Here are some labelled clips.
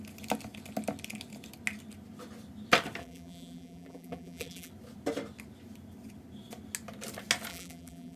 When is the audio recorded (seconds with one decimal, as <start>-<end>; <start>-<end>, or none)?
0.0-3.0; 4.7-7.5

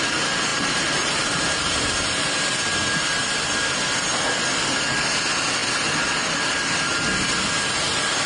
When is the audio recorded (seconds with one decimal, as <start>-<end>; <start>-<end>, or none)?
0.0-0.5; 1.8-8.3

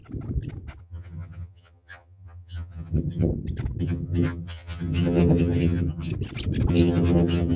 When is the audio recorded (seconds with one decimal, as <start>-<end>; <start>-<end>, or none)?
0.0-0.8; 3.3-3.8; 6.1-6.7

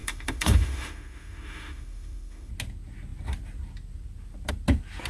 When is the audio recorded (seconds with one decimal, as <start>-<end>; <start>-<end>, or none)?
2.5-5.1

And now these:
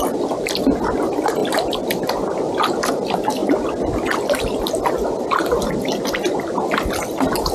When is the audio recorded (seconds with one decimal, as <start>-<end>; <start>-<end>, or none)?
0.0-1.4; 2.9-7.5